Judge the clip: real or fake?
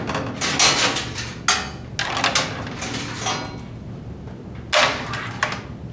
real